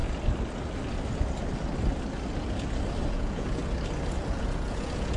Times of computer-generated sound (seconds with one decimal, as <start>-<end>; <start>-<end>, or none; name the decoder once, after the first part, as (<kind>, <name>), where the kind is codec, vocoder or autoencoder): 3.1-3.6 (vocoder, Vocos); 4.4-5.2